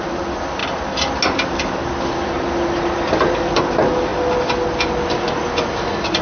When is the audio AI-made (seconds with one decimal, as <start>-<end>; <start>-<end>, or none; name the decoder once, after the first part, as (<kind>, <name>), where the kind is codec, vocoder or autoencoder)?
none